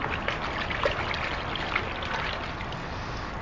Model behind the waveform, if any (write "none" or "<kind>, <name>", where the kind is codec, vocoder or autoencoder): none